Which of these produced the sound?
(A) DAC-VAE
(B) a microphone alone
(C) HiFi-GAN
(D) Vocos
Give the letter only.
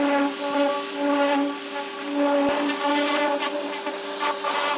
B